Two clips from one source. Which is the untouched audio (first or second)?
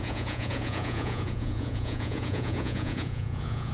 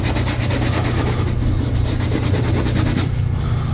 second